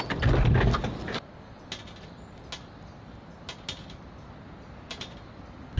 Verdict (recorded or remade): recorded